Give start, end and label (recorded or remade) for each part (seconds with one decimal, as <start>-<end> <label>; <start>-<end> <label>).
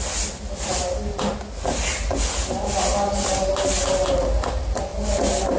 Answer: 0.0-5.6 recorded